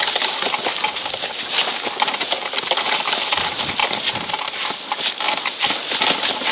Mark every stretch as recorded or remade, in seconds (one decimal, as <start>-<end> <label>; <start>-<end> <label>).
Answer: 0.0-3.8 recorded; 3.8-4.7 remade; 4.7-6.5 recorded